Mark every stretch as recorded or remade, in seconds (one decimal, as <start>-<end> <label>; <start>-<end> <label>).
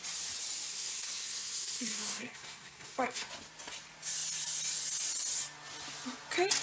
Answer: 0.0-0.7 recorded; 0.7-3.3 remade; 3.3-6.6 recorded